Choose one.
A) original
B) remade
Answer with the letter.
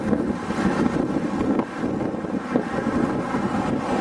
A